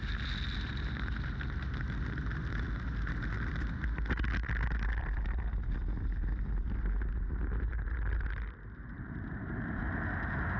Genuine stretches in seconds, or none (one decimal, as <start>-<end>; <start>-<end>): 0.0-7.7; 9.8-10.6

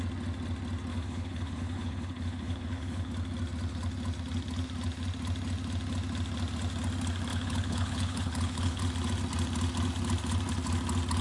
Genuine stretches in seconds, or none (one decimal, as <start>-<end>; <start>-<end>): 0.0-0.9; 3.1-7.3; 8.8-11.2

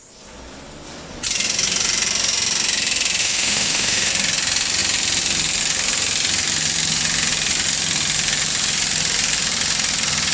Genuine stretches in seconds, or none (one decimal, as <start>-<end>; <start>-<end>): 0.0-3.2; 4.1-10.3

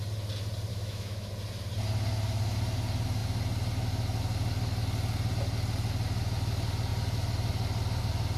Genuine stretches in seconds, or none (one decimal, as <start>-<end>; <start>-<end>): 0.0-0.7; 1.3-8.4

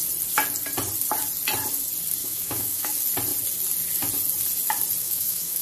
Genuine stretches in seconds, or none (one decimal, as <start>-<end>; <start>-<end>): 0.0-2.2; 2.9-5.0

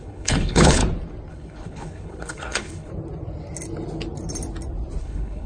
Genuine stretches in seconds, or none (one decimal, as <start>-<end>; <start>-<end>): 0.8-1.3; 2.9-5.0